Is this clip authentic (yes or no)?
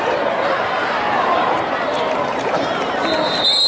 no